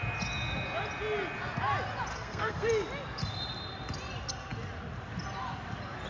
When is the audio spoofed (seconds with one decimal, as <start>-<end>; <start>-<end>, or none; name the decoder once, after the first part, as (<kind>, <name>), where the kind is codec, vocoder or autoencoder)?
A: 2.1-2.7 (codec, SNAC)

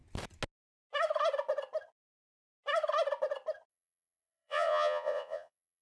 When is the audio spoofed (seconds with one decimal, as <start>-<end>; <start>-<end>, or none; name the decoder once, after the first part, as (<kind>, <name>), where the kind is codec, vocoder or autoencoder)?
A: 3.7-5.8 (vocoder, Vocos)

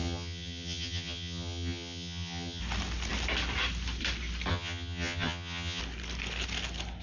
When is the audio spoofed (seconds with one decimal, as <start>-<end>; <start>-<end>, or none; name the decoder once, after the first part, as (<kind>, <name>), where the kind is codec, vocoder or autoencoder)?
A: 0.0-2.6 (vocoder, HiFi-GAN); 4.5-5.8

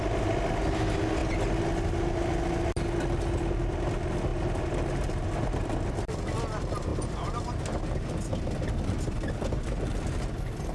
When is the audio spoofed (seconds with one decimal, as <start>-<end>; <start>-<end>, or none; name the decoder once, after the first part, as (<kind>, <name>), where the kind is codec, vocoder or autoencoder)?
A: none

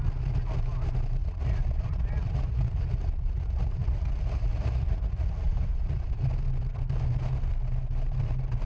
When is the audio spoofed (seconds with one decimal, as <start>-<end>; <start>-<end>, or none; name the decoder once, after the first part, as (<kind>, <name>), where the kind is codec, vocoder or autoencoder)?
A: 1.2-6.3 (vocoder, Vocos)

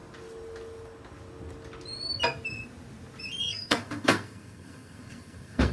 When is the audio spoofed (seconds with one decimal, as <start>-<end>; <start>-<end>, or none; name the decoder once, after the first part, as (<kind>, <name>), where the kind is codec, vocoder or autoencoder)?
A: 3.4-5.7 (codec, SNAC)